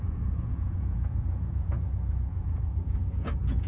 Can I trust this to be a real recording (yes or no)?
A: no